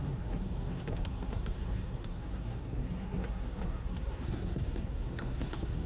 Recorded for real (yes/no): no